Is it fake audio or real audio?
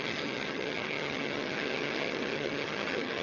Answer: fake